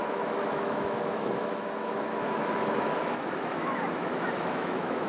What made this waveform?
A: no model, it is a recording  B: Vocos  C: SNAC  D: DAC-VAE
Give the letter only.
D